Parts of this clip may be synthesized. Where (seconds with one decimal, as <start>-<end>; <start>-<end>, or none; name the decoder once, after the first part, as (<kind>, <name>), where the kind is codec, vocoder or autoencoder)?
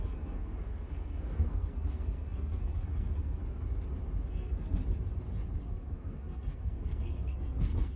0.0-3.4 (codec, SNAC); 4.3-4.8; 5.6-8.0